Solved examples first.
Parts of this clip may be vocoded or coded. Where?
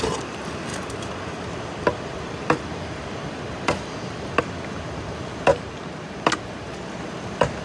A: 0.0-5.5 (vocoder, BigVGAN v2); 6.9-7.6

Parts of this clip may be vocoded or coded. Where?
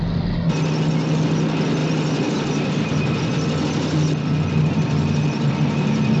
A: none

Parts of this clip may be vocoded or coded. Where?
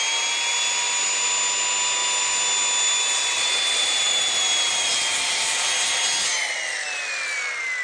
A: 3.3-5.0 (vocoder, BigVGAN v2)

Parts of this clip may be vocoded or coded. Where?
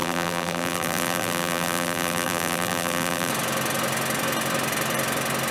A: 0.0-3.3 (vocoder, BigVGAN v2)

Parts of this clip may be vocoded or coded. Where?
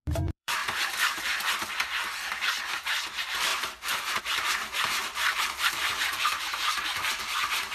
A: 0.0-0.6 (vocoder, BigVGAN v2); 2.7-7.7